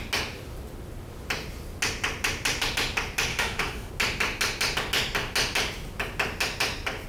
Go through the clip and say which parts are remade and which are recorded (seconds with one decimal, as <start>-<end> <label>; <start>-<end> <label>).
0.0-3.3 recorded; 3.3-3.9 remade; 3.9-7.1 recorded

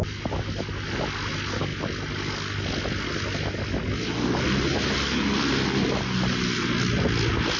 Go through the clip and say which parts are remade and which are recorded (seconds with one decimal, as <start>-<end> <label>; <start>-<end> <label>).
0.0-7.6 recorded

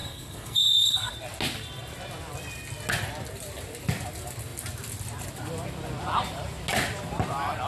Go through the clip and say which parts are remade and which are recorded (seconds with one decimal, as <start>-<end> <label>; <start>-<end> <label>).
0.0-1.1 remade; 1.1-7.7 recorded

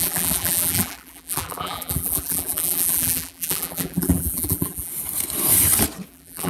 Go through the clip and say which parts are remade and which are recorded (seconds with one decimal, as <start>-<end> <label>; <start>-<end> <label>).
0.0-4.9 remade; 4.9-6.1 recorded; 6.1-6.5 remade